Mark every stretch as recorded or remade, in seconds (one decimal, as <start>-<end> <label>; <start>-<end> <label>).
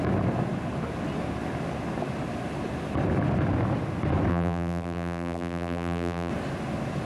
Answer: 0.0-4.3 recorded; 4.3-6.3 remade; 6.3-7.1 recorded